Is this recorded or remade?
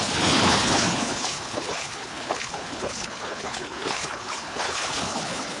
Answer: remade